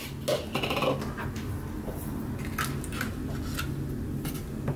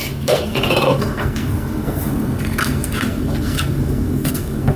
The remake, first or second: second